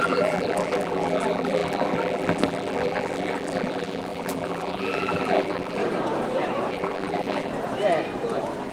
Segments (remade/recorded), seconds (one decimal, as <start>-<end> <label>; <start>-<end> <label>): 0.0-5.8 remade; 5.8-6.7 recorded; 6.7-7.5 remade; 7.5-8.7 recorded